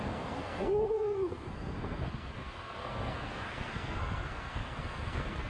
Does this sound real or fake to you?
fake